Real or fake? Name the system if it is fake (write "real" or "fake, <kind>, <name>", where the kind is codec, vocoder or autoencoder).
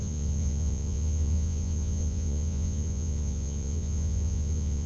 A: fake, vocoder, Vocos